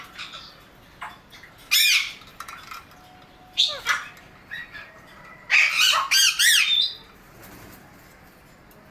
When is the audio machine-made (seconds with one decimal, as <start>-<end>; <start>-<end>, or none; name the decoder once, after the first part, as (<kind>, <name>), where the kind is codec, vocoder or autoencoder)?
2.3-2.9 (vocoder, BigVGAN v2)